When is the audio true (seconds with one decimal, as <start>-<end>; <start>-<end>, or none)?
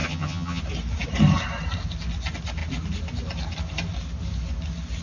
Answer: 0.6-5.0